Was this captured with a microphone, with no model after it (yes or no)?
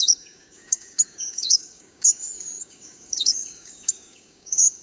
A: no